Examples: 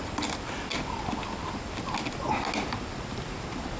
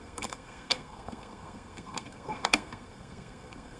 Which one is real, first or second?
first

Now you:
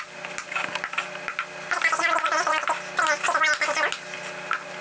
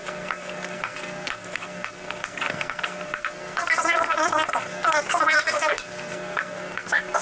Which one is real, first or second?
first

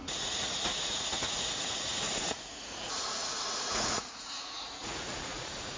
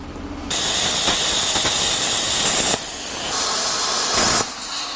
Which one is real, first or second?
second